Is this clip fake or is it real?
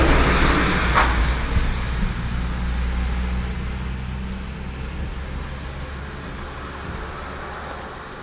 real